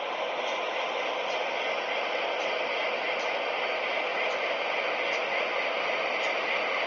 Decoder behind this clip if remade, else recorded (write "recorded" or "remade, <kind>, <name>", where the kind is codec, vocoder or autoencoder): recorded